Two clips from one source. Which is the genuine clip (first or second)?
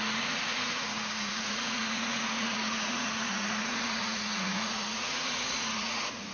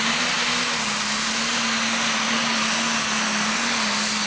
second